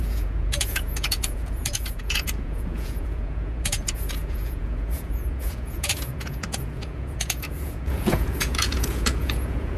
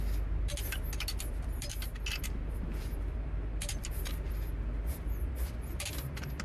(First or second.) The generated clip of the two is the first